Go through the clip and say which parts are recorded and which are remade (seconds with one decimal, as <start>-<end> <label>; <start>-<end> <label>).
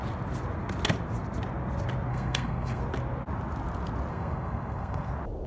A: 0.0-2.1 recorded; 2.1-2.8 remade; 2.8-4.1 recorded; 4.1-5.1 remade; 5.1-5.5 recorded